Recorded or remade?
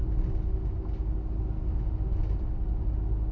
recorded